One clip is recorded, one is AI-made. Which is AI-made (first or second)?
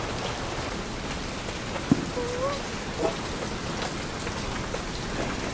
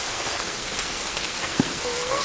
second